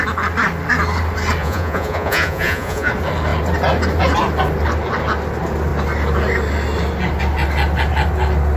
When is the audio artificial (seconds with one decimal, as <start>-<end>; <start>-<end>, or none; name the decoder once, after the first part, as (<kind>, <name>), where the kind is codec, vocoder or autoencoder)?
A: 1.4-2.9 (vocoder, Vocos)